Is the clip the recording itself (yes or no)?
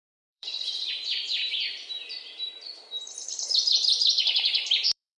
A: no